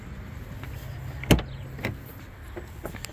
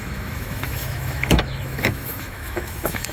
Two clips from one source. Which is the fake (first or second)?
second